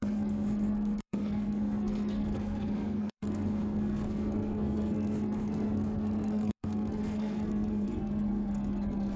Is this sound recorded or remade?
remade